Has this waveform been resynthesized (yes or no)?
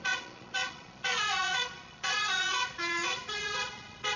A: yes